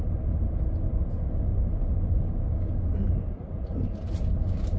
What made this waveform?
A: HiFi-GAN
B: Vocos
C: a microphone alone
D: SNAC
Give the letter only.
C